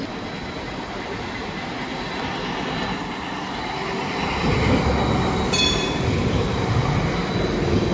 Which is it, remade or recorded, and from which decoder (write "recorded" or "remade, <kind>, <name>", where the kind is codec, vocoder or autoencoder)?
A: recorded